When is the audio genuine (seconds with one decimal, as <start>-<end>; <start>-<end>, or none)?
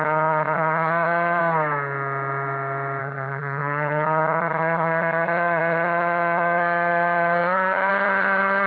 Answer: 1.4-3.0